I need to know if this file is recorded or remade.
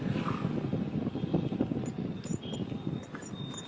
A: recorded